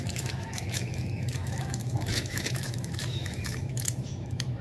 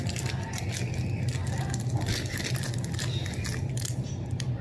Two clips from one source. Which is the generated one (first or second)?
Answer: first